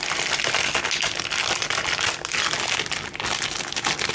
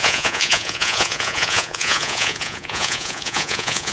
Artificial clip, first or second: second